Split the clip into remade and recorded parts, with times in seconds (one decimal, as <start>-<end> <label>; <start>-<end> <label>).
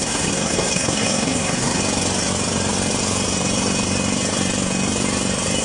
0.0-1.8 remade; 1.8-5.6 recorded